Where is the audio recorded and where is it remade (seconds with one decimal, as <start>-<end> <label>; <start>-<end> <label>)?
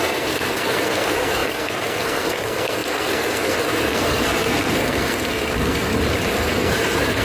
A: 0.0-5.9 remade; 5.9-6.4 recorded; 6.4-7.2 remade